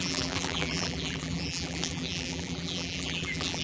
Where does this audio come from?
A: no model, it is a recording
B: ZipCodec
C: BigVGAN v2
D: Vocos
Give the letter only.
C